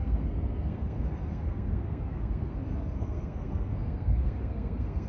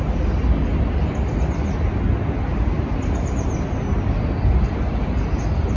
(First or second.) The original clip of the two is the second